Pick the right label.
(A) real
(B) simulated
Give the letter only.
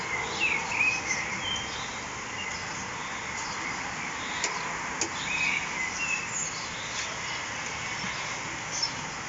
A